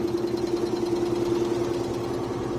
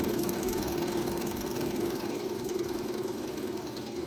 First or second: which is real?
first